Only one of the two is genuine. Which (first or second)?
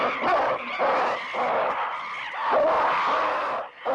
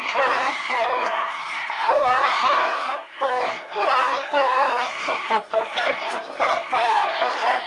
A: first